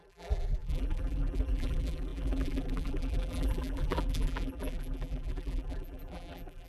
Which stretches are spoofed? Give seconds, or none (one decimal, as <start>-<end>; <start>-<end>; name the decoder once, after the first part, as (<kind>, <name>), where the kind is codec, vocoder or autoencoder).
0.0-6.7 (vocoder, BigVGAN v2)